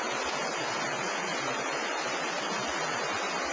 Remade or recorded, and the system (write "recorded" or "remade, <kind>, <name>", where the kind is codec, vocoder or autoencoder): recorded